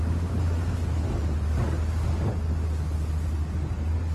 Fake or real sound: real